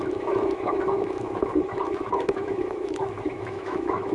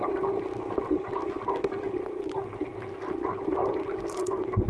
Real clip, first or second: second